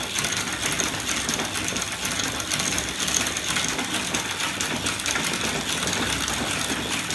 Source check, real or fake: real